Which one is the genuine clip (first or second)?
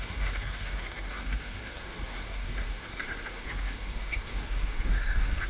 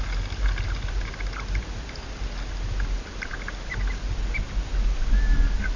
second